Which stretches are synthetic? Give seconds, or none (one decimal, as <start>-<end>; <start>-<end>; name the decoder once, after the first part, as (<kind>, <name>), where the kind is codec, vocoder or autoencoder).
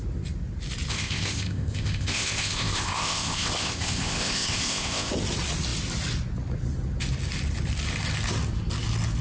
0.9-5.1 (codec, ZipCodec)